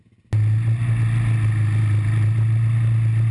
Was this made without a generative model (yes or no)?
yes